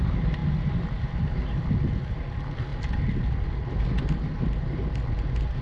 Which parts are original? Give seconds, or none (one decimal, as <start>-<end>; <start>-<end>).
0.0-5.6